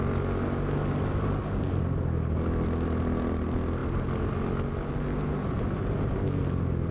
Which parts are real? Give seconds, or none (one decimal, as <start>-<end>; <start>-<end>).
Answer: 0.0-6.9